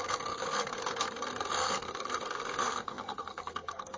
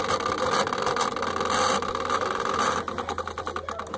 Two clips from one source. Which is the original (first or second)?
second